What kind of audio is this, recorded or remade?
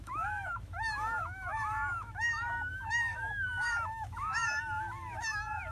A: remade